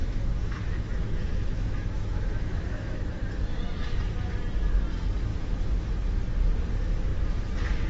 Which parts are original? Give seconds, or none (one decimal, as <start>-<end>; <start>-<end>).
3.2-5.3; 5.9-7.9